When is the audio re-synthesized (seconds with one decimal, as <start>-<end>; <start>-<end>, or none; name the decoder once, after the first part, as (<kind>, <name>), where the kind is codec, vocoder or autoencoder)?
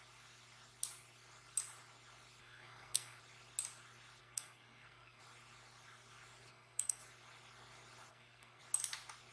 2.4-3.2 (codec, SNAC); 4.2-5.2; 6.5-7.0; 8.1-8.6